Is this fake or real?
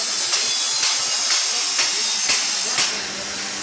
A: real